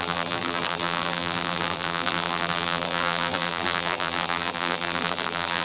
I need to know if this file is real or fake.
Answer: fake